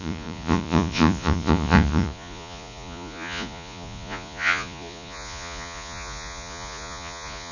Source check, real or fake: fake